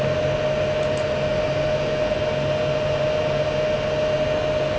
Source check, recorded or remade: recorded